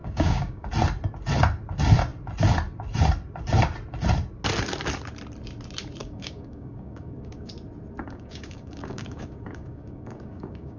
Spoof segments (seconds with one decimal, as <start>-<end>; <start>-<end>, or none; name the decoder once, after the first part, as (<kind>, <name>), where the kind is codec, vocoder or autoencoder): 0.0-0.7 (codec, DAC); 6.0-7.5; 8.0-10.8